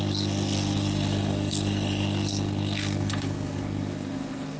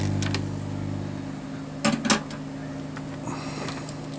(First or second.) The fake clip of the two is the first